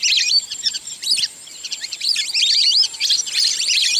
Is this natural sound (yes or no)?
no